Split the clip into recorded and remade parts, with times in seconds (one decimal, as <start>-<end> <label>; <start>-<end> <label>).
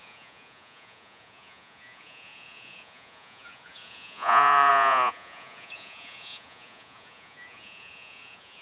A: 0.0-8.6 remade